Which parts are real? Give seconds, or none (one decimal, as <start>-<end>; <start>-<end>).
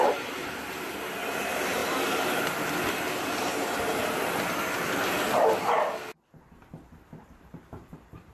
3.9-7.2